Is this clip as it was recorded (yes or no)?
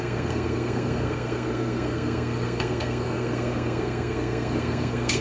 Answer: no